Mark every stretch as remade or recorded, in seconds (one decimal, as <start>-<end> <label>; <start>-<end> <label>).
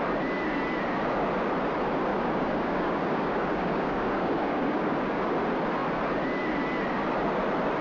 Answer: 0.0-2.1 recorded; 2.1-5.3 remade; 5.3-7.8 recorded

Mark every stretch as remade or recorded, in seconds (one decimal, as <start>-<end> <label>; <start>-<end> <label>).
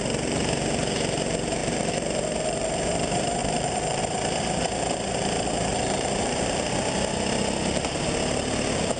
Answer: 0.0-1.6 recorded; 1.6-2.8 remade; 2.8-3.4 recorded; 3.4-4.0 remade; 4.0-5.7 recorded; 5.7-6.7 remade; 6.7-9.0 recorded